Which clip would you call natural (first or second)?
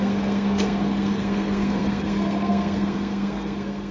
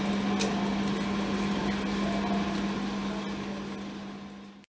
second